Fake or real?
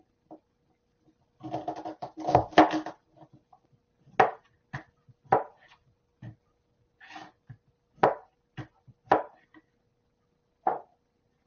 real